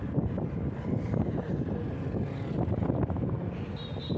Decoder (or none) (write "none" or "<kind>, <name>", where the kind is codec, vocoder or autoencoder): none